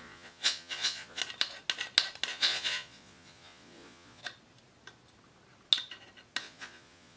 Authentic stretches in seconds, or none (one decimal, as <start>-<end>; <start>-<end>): 1.2-2.3; 4.2-6.4